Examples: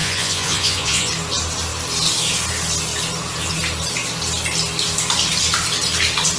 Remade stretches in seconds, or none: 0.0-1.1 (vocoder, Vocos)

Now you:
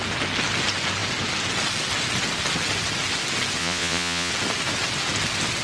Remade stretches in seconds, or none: 3.6-4.3 (vocoder, Vocos)

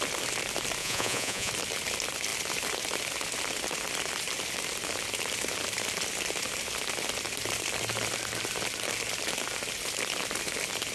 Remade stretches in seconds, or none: 0.8-1.5 (vocoder, Vocos)

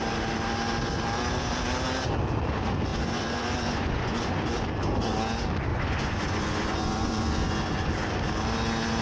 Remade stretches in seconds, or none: 2.9-4.4 (vocoder, Vocos); 5.7-7.9

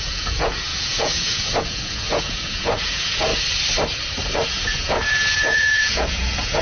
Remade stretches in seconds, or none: 0.0-3.3 (vocoder, Vocos); 4.5-6.6